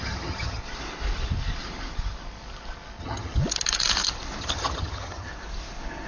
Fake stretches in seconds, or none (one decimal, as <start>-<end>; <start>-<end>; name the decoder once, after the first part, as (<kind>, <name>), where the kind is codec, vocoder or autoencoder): 0.0-0.6 (vocoder, HiFi-GAN); 3.0-3.4; 4.4-5.3